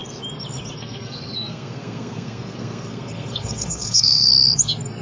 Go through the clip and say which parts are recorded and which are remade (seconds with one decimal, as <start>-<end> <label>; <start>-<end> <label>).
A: 0.0-0.8 recorded; 0.8-4.3 remade; 4.3-5.0 recorded